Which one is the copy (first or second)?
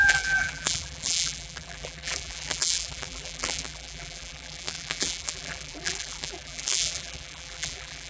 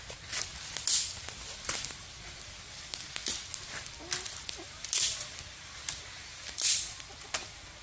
first